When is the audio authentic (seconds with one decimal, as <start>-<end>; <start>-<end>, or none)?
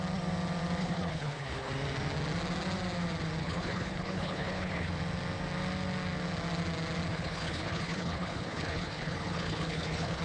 0.0-0.8; 1.7-3.4; 4.9-7.1